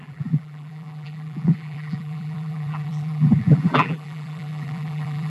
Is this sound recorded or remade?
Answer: remade